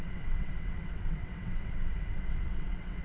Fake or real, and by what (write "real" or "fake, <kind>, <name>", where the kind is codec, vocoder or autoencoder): fake, vocoder, WaveNeXt